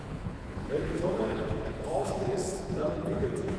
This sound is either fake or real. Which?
fake